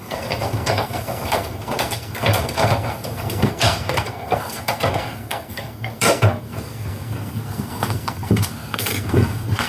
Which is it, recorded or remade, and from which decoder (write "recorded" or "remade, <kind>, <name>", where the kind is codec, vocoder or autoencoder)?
remade, codec, SNAC